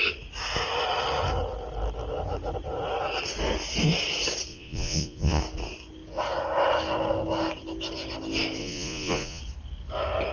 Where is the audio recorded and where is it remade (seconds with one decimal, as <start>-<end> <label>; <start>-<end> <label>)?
0.0-4.5 recorded; 4.5-5.4 remade; 5.4-8.6 recorded; 8.6-9.4 remade; 9.4-10.3 recorded